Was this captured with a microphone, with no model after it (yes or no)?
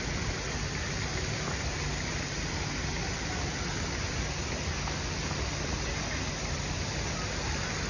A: yes